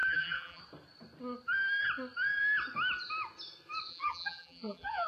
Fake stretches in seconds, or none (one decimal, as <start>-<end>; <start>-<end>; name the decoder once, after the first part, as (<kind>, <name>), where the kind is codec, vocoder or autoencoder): 0.0-0.6 (vocoder, BigVGAN v2); 3.9-5.1